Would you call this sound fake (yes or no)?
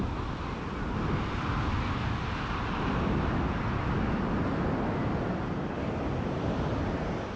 no